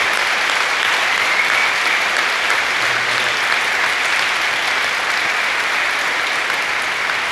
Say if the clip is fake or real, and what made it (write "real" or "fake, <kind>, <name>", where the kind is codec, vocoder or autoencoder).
real